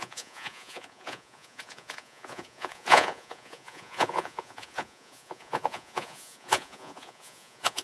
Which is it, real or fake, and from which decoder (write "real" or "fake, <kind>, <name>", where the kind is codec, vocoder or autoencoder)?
fake, vocoder, Vocos